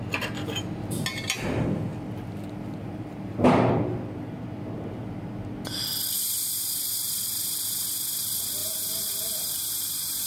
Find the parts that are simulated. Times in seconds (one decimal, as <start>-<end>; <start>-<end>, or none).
2.8-3.7; 8.6-10.3